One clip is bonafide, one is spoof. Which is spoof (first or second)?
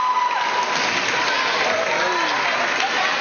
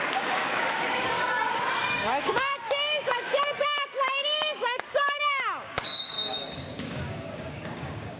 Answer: second